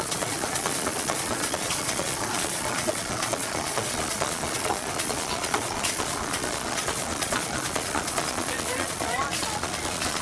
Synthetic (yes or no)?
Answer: yes